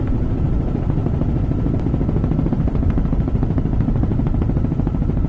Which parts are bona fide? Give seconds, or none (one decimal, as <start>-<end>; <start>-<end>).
1.0-2.5